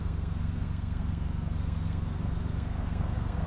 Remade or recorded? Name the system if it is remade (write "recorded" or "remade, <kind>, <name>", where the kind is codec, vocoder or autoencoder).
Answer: remade, codec, SNAC